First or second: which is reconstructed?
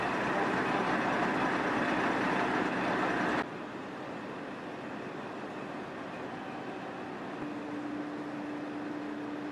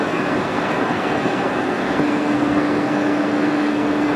second